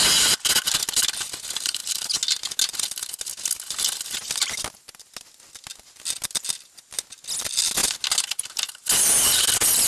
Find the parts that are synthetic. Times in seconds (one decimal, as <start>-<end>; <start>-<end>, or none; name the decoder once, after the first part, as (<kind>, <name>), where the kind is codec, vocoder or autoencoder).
none